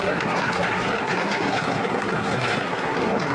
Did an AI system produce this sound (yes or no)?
yes